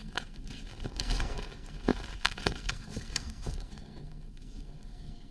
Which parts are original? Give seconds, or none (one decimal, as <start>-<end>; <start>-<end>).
none